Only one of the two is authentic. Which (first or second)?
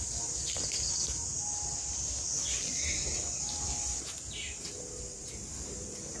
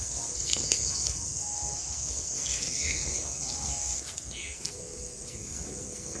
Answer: first